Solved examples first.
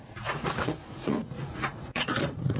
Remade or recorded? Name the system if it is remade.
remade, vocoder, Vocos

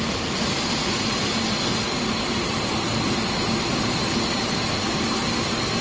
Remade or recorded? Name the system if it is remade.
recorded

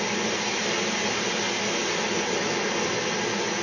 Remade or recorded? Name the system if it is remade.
recorded